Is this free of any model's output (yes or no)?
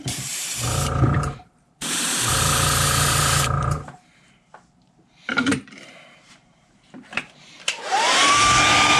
no